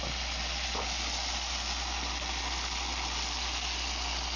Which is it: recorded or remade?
recorded